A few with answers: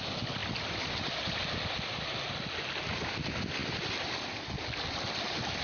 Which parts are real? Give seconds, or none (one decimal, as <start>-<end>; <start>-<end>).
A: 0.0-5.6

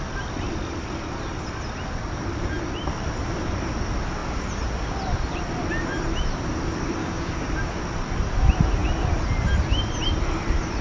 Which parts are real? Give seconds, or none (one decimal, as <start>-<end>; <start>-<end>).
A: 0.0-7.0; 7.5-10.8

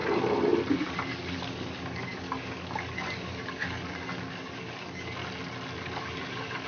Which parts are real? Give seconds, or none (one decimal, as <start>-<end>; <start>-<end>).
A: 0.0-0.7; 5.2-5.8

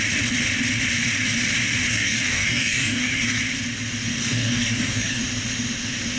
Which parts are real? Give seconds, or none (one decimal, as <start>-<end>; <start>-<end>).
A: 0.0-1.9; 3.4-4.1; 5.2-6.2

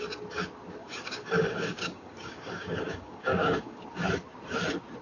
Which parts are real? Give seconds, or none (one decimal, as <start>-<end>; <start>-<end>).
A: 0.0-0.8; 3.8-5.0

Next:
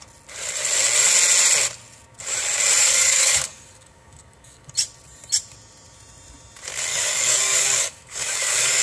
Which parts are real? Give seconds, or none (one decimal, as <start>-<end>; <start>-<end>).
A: 0.0-2.8; 4.7-6.9

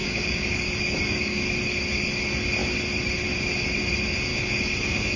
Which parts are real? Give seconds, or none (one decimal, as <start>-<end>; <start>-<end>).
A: 1.4-4.3